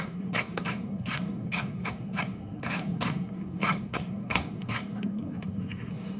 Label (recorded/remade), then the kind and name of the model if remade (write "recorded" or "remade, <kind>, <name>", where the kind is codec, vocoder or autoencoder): remade, codec, SNAC